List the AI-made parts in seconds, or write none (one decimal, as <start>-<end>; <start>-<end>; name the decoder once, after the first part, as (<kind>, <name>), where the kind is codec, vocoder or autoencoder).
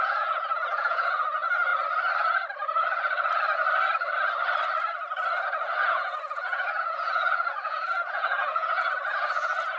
0.0-1.7 (vocoder, Vocos); 5.9-9.8